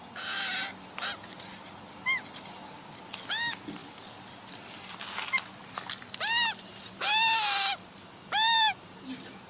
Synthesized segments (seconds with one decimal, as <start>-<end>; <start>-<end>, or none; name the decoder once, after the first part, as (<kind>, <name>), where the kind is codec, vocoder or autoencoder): none